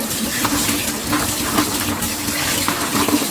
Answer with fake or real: fake